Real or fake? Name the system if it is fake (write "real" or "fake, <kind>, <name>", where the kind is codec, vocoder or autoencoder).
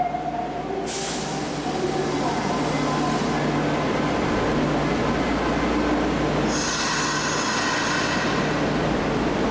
real